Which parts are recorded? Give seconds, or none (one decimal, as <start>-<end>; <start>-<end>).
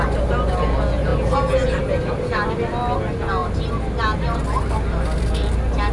0.0-5.9